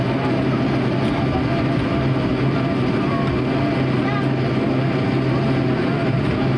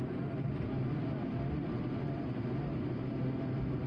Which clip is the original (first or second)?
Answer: first